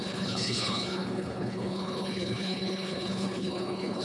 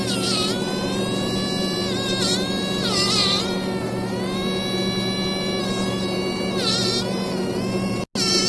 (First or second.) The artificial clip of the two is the first